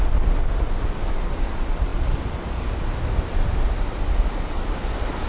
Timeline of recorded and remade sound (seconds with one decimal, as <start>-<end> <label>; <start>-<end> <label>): 0.0-5.3 recorded